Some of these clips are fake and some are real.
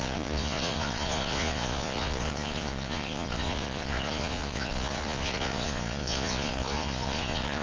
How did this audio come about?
fake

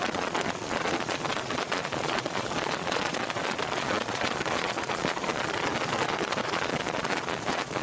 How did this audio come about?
fake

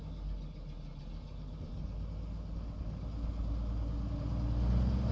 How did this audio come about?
real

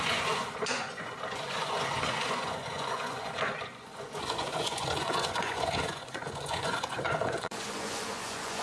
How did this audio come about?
fake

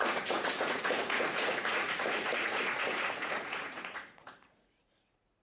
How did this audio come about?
fake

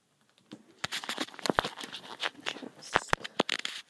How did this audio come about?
real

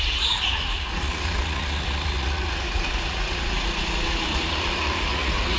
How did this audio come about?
fake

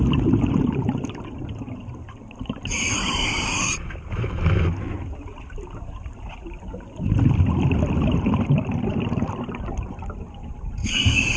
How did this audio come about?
real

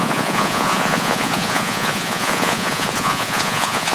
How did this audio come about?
fake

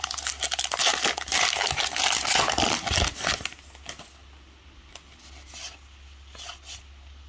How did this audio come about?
real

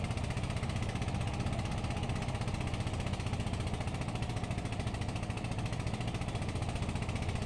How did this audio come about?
real